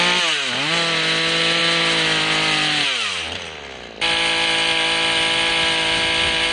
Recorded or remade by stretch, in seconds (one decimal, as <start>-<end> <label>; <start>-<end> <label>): 0.0-6.5 recorded